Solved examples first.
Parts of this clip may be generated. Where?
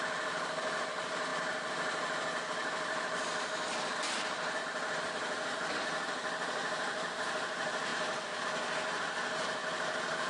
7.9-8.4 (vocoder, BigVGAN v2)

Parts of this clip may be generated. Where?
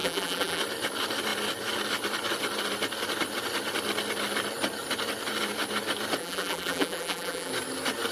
0.0-0.6 (vocoder, BigVGAN v2); 6.2-7.5